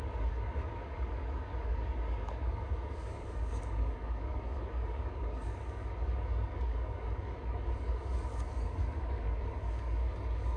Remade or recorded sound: remade